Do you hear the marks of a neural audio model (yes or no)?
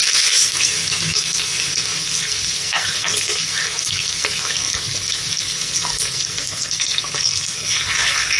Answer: yes